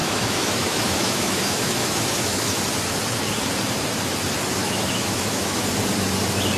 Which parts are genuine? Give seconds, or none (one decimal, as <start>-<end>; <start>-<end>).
2.6-4.6; 5.6-6.6